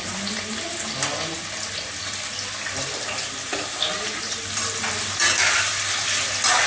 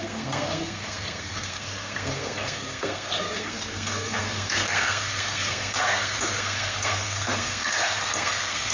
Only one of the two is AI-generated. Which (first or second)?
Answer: second